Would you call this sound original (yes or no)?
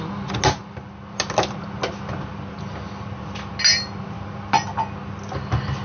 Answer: yes